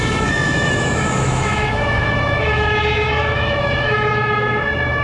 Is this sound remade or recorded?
remade